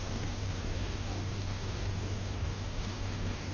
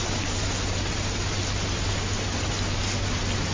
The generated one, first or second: first